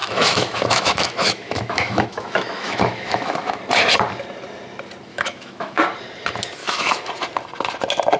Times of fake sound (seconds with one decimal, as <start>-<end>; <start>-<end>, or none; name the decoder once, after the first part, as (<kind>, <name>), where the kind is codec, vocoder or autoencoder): 0.0-3.6 (autoencoder, DAC-VAE); 5.1-5.8; 6.6-7.1